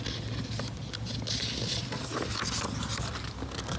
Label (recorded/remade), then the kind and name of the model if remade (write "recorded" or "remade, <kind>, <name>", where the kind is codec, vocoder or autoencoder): recorded